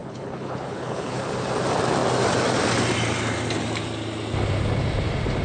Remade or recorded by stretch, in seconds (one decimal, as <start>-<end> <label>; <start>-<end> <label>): 0.0-1.2 remade; 1.2-5.4 recorded